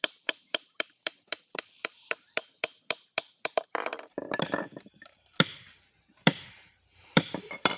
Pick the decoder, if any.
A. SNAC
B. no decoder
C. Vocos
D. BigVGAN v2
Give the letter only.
D